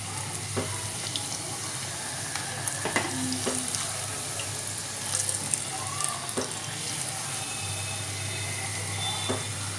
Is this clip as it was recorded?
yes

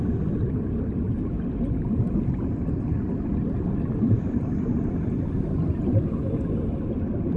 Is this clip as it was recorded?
yes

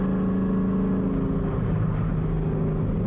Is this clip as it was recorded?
yes